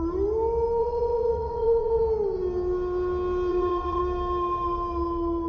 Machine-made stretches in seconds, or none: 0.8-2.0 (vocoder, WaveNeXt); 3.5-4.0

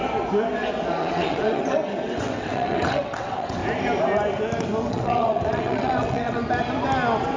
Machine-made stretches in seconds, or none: 0.9-3.6 (vocoder, WaveNeXt); 4.9-6.4

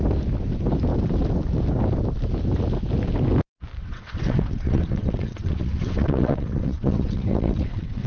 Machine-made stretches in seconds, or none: 3.8-8.1 (vocoder, WaveNeXt)

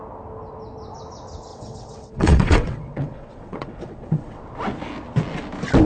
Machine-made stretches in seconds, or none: 1.5-4.4 (vocoder, WaveNeXt)

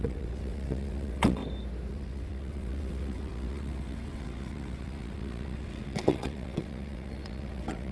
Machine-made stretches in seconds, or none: 0.0-1.4 (vocoder, WaveNeXt); 1.9-7.9

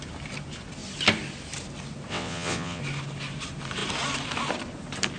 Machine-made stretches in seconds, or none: 2.1-2.8 (vocoder, WaveNeXt)

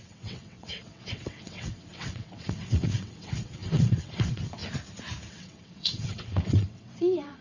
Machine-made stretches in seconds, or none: 0.0-4.6 (vocoder, WaveNeXt); 5.3-7.4

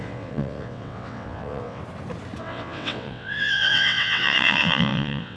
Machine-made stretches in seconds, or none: 0.0-1.8 (vocoder, WaveNeXt); 2.4-5.4